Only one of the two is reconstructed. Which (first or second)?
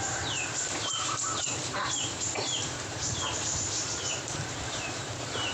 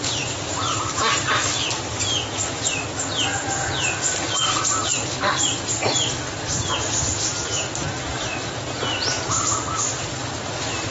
first